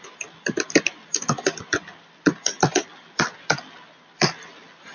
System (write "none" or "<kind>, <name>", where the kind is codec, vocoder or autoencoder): vocoder, BigVGAN v2